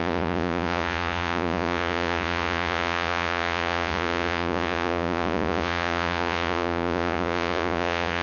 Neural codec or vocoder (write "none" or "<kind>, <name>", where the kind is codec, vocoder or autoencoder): vocoder, Vocos